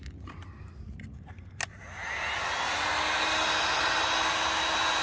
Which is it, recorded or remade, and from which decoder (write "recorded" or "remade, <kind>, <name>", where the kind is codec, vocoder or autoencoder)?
recorded